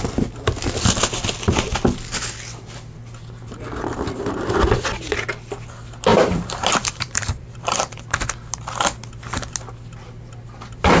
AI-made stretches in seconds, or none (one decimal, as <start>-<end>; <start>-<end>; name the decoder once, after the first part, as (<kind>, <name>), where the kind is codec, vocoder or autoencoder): 6.1-7.9 (vocoder, BigVGAN v2)